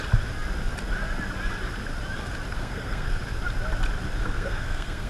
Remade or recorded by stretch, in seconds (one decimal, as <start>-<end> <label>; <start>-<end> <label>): 0.0-2.5 recorded; 2.5-3.2 remade; 3.2-4.2 recorded; 4.2-5.1 remade